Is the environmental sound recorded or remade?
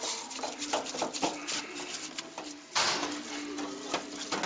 recorded